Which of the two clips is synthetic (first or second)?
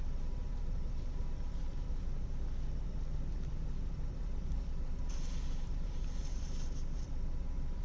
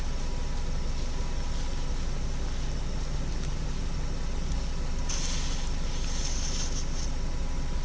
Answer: first